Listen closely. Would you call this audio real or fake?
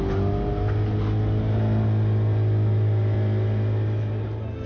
real